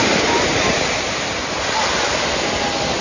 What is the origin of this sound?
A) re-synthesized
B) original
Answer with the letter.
B